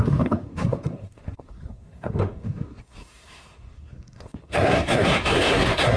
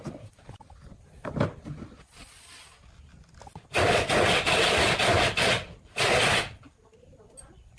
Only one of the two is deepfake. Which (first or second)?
first